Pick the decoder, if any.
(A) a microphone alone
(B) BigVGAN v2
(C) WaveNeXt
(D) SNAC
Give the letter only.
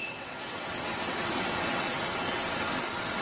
C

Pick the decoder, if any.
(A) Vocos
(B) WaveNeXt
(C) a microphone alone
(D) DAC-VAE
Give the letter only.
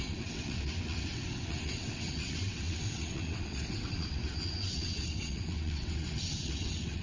B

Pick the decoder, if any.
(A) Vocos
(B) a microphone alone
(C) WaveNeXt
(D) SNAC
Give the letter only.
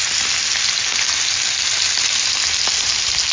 B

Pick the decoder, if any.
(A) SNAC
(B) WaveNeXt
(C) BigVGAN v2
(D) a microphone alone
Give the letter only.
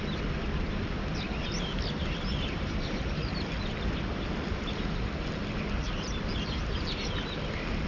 D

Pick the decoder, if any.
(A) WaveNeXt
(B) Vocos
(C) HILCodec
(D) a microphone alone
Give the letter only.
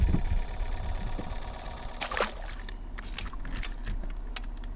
D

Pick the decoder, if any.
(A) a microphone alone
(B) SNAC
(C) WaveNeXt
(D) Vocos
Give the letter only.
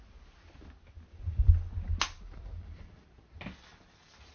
A